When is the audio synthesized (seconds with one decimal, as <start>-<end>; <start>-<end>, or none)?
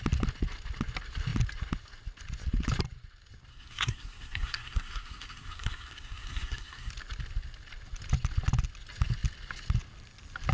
3.5-6.9